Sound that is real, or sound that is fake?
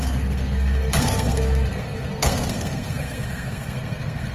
fake